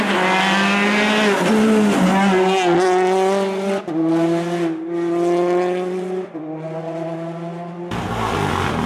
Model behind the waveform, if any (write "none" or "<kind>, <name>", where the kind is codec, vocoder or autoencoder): none